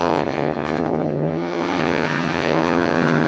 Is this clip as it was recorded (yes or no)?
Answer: no